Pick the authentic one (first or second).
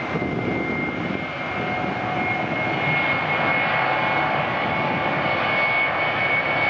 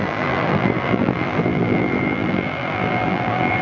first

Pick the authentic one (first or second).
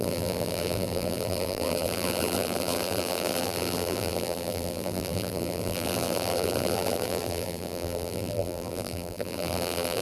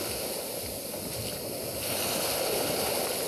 second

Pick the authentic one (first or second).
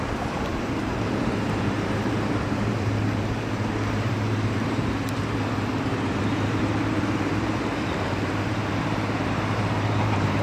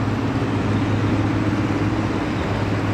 second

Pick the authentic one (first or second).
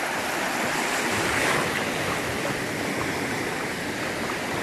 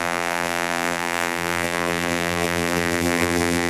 first